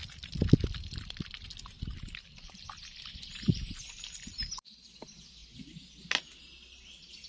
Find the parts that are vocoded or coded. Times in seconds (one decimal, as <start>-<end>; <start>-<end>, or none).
none